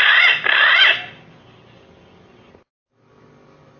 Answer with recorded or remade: recorded